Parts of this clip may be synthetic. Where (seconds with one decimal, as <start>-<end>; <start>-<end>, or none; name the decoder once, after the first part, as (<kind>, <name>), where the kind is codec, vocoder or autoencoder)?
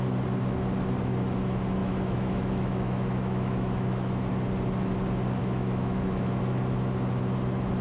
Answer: 1.8-4.3 (autoencoder, DAC-VAE); 5.4-6.4